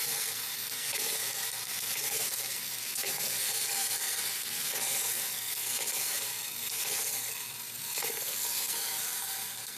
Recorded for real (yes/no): no